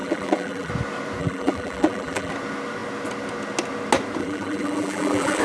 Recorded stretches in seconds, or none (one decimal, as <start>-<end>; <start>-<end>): 0.7-1.2; 2.3-4.2